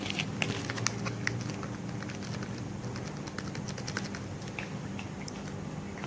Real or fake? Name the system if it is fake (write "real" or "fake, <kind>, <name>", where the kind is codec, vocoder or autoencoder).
real